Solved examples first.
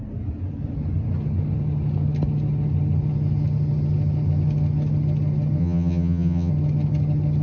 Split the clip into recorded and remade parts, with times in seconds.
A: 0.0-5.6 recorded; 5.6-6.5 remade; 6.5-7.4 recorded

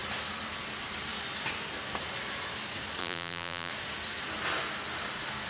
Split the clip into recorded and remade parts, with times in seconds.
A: 0.0-3.0 recorded; 3.0-3.7 remade; 3.7-5.5 recorded

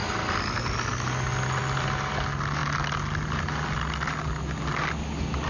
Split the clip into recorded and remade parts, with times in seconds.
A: 0.0-5.5 recorded